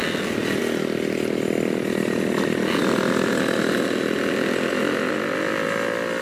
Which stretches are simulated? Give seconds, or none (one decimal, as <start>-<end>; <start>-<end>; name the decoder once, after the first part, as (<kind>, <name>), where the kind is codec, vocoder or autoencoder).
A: none